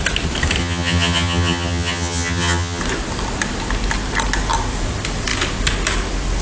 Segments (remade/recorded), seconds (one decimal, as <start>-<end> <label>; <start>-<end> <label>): 0.0-0.6 recorded; 0.6-2.8 remade; 2.8-6.4 recorded